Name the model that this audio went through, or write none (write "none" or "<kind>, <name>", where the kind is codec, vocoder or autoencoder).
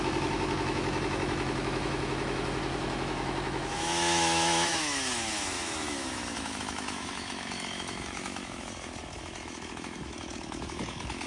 autoencoder, DAC-VAE